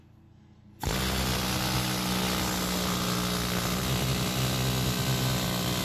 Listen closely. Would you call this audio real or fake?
real